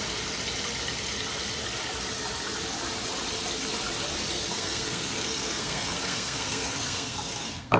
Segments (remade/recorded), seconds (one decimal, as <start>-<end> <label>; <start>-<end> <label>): 0.0-4.5 recorded; 4.5-7.8 remade